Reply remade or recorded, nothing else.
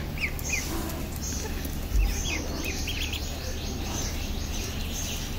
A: recorded